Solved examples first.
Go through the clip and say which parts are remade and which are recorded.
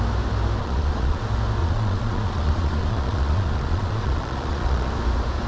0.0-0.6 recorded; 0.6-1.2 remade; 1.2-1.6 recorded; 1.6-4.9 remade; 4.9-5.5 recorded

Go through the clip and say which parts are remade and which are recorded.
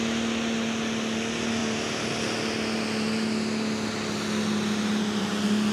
0.0-5.7 recorded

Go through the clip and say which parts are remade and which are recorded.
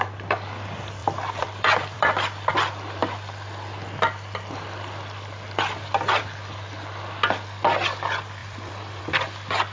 0.0-1.0 recorded; 1.0-2.5 remade; 2.5-8.4 recorded; 8.4-9.0 remade; 9.0-9.7 recorded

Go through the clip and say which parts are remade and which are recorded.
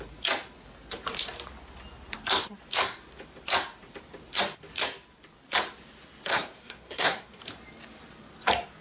0.0-6.3 recorded; 6.3-7.4 remade; 7.4-8.8 recorded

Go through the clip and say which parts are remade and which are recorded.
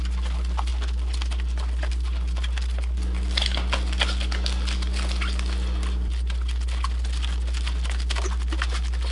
0.0-9.1 recorded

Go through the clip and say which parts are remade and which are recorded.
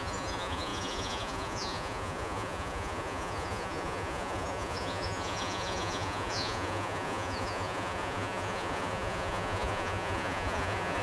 0.0-11.0 remade